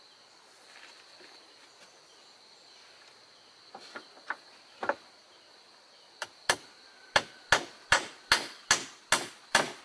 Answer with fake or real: real